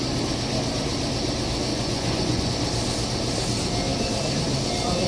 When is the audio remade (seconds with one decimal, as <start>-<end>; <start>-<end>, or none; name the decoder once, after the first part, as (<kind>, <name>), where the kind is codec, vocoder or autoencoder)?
1.7-2.5 (vocoder, Vocos)